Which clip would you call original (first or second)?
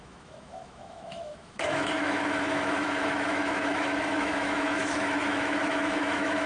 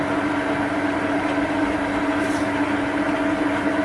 second